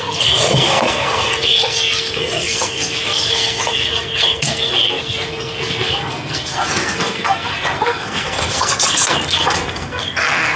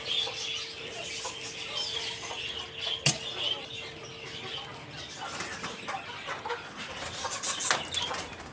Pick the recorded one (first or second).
second